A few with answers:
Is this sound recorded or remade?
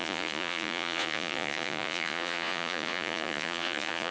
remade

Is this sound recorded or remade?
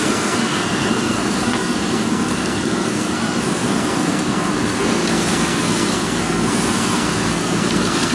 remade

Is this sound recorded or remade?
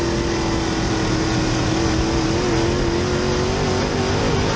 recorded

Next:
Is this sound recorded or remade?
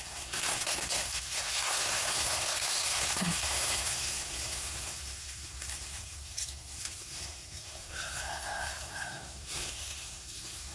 remade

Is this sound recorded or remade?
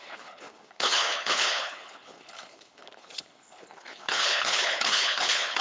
remade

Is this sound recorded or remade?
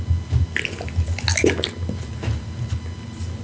recorded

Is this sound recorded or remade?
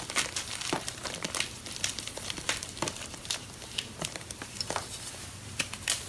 remade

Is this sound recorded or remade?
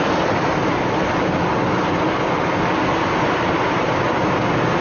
recorded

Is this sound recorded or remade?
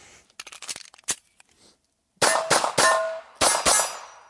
recorded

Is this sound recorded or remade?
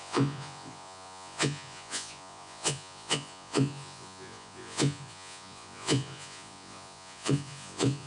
remade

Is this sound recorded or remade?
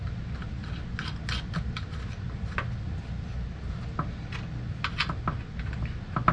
recorded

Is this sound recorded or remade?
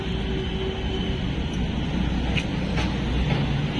recorded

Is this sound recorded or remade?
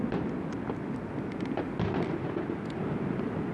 recorded